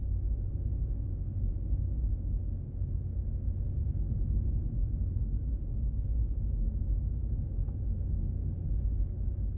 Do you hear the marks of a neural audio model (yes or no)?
yes